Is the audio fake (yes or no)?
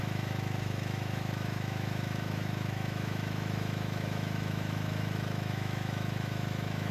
yes